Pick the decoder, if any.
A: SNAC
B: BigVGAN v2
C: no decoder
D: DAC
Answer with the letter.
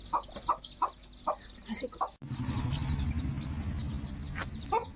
C